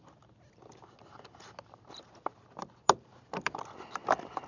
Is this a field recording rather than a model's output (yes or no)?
yes